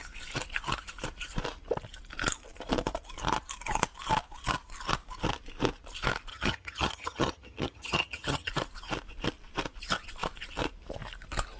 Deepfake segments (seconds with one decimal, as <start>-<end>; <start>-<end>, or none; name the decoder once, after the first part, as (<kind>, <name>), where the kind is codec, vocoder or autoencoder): 6.3-8.5 (vocoder, HiFi-GAN)